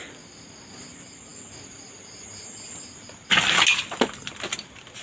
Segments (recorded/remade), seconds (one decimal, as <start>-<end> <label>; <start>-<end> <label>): 0.0-5.0 recorded